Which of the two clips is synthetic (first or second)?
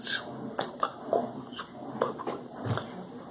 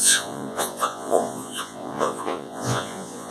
second